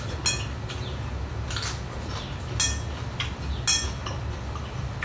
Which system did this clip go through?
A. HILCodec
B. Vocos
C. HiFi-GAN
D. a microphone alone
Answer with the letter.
D